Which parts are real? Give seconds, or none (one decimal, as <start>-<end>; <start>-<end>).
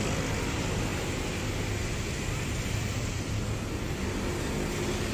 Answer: 0.0-0.9; 4.0-5.1